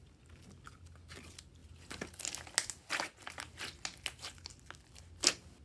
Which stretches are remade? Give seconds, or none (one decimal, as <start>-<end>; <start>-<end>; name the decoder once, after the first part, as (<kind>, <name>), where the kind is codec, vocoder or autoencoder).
none